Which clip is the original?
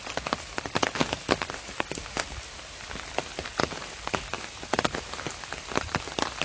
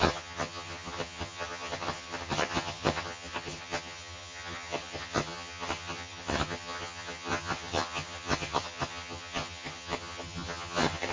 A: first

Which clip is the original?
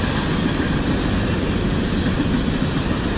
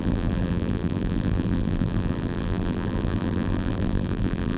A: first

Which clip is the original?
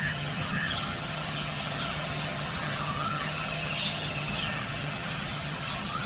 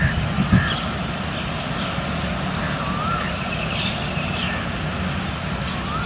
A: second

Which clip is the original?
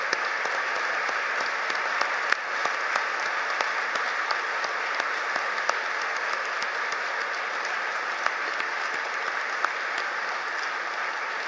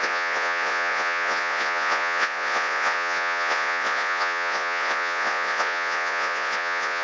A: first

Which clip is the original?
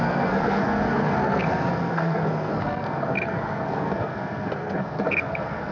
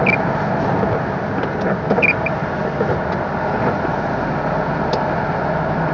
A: second